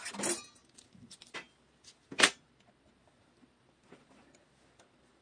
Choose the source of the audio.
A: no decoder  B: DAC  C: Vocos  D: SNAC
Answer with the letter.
A